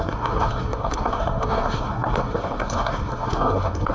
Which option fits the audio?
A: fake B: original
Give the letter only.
A